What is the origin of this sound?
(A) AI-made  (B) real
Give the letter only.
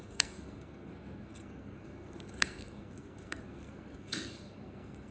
A